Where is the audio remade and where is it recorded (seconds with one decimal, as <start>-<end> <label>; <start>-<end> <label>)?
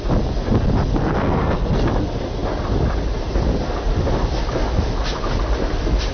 0.0-1.0 recorded; 1.0-1.9 remade; 1.9-6.1 recorded